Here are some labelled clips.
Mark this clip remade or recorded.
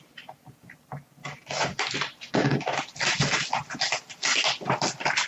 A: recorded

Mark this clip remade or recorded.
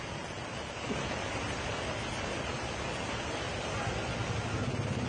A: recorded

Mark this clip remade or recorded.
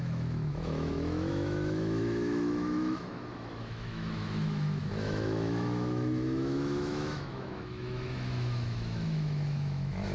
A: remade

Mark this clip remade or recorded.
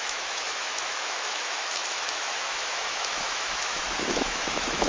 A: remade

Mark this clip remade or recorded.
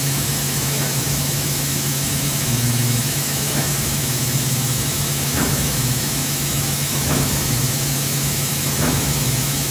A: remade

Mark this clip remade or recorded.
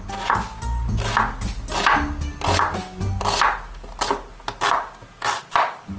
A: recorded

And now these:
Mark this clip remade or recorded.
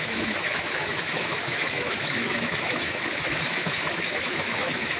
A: remade